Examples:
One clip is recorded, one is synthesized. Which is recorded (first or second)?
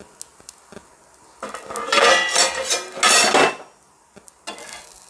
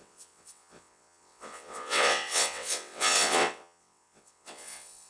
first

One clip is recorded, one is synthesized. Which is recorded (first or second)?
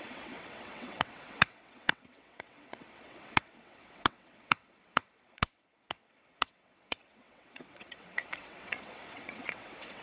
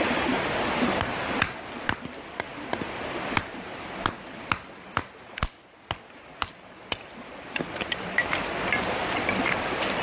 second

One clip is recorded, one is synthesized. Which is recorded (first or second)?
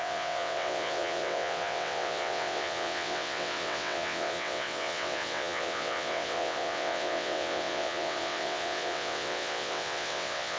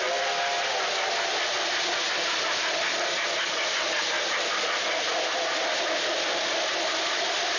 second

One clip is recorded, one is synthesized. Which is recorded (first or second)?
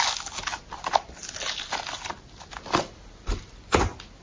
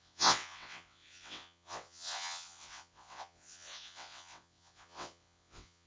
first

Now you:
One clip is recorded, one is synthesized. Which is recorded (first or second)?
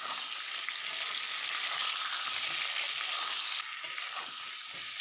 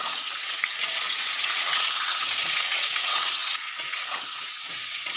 first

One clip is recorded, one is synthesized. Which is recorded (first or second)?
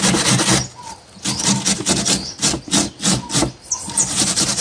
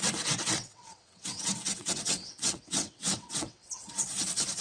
first